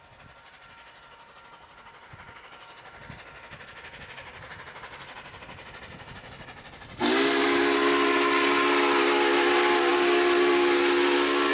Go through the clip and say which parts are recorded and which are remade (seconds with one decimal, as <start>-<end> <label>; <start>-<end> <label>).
0.0-11.5 recorded